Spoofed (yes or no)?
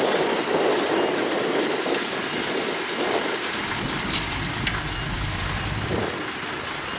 no